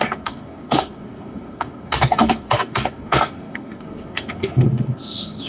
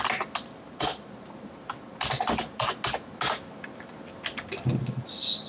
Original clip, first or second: second